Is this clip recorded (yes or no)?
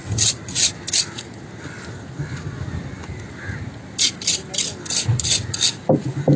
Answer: yes